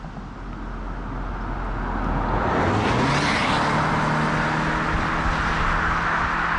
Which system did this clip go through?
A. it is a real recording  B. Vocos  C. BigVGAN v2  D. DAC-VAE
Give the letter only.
A